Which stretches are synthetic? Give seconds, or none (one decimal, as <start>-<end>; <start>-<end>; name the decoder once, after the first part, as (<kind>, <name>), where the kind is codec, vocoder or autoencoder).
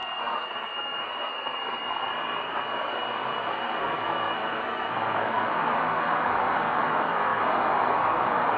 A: 0.0-8.6 (codec, SNAC)